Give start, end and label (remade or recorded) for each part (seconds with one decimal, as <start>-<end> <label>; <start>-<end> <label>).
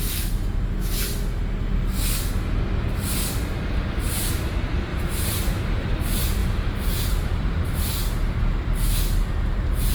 0.0-4.9 recorded; 4.9-6.0 remade; 6.0-6.4 recorded; 6.4-7.7 remade; 7.7-9.9 recorded